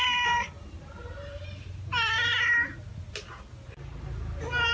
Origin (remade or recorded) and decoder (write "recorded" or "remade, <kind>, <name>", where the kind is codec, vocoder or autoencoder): recorded